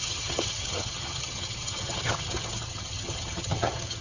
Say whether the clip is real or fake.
fake